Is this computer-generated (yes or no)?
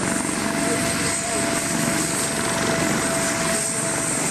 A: no